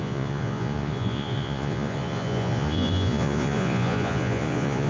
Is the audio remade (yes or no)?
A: yes